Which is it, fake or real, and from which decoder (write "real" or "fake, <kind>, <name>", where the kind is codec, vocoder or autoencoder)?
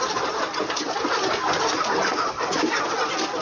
real